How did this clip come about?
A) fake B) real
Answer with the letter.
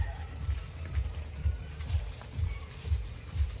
A